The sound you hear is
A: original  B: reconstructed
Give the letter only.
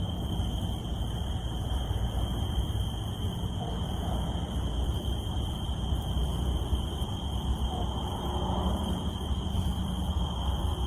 B